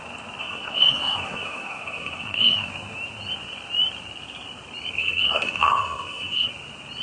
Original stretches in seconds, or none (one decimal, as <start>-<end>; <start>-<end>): 0.0-0.4; 2.7-5.0; 6.5-7.0